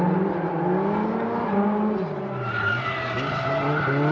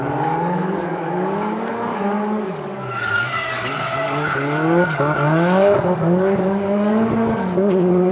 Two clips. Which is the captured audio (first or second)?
first